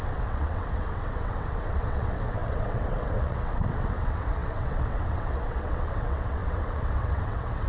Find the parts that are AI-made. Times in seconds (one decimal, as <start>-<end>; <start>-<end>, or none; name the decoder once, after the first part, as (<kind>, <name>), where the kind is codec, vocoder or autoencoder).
0.0-7.7 (vocoder, WaveNeXt)